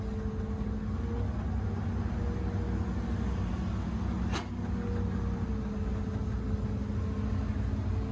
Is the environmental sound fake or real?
real